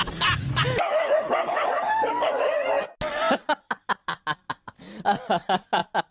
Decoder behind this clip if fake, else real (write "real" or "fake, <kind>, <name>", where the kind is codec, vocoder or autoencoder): real